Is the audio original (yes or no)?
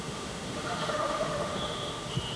no